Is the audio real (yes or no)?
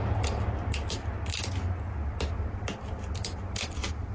yes